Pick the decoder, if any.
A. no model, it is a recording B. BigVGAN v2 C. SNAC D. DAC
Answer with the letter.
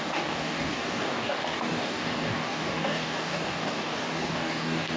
D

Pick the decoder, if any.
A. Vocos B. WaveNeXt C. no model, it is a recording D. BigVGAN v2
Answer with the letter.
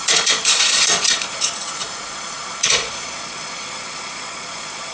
A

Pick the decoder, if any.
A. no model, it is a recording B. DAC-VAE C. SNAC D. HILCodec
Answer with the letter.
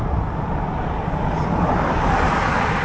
A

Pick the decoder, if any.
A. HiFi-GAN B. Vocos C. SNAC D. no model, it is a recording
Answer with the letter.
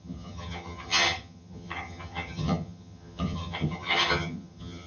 A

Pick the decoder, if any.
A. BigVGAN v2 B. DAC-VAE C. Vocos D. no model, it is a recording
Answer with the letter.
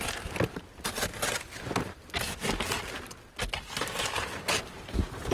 D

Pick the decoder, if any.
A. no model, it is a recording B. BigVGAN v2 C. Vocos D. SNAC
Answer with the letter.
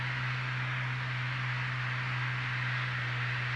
A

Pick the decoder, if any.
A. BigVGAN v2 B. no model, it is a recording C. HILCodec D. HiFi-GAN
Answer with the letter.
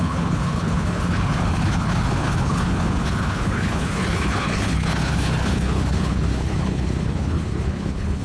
C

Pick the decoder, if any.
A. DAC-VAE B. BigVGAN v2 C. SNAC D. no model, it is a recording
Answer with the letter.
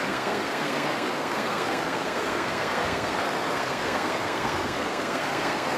C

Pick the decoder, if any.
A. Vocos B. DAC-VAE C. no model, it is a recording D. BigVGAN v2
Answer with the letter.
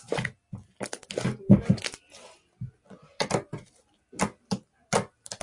C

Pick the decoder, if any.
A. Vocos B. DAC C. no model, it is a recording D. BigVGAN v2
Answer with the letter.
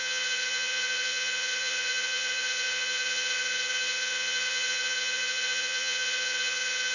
A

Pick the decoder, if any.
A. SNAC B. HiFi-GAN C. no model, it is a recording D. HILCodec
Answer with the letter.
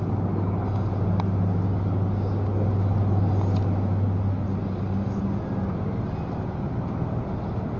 C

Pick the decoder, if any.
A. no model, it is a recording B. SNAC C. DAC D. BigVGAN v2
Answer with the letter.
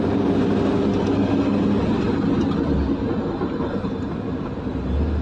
A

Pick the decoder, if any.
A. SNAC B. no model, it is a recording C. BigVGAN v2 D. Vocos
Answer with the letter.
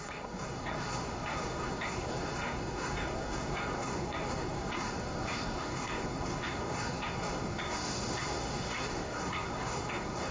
A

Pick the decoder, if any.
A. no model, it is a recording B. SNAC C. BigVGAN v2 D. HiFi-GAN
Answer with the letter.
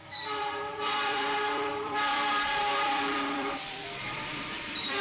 C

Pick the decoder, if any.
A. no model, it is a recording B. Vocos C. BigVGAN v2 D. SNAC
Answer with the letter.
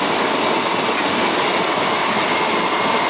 A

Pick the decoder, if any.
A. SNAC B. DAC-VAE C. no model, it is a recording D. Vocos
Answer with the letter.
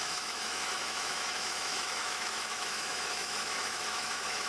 B